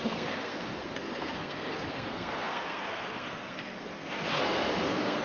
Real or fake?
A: fake